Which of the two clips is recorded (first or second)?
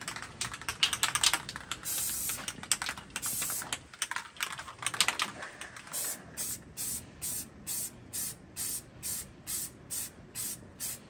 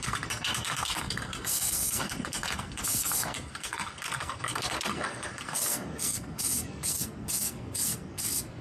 first